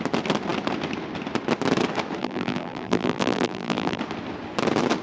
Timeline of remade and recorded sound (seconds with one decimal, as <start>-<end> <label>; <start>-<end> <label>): 0.0-2.2 recorded; 2.2-4.0 remade; 4.0-5.0 recorded